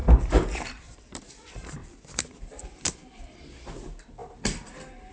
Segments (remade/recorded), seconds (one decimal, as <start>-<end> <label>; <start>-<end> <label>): 0.0-1.3 remade; 1.3-1.8 recorded; 1.8-2.6 remade; 2.6-4.2 recorded; 4.2-5.1 remade